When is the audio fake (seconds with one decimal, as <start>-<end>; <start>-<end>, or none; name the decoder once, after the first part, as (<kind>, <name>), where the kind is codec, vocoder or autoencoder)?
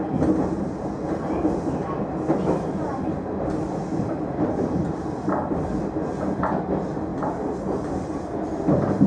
none